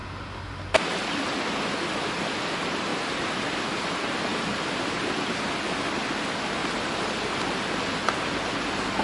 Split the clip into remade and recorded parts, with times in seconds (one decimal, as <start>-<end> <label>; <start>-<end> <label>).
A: 0.0-2.9 recorded; 2.9-3.5 remade; 3.5-4.3 recorded; 4.3-6.1 remade; 6.1-6.6 recorded; 6.6-8.0 remade; 8.0-9.0 recorded